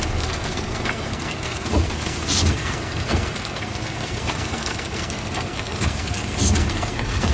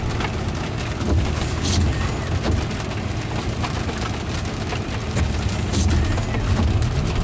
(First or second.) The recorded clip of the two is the second